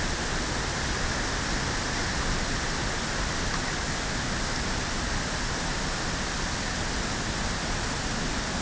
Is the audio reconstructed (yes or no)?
no